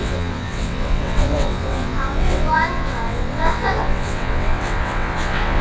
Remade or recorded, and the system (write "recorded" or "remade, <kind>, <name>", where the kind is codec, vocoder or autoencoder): remade, vocoder, WaveNeXt